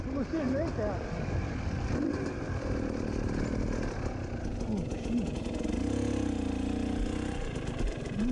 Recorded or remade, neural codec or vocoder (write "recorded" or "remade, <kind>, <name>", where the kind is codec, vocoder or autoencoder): recorded